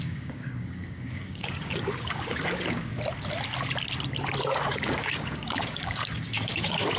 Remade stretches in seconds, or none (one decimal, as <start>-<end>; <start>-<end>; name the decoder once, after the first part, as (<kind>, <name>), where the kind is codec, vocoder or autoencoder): 0.0-2.9 (codec, DAC); 4.4-7.0